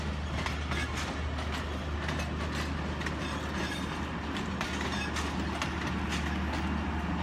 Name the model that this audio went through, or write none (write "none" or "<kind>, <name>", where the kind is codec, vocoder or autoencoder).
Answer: none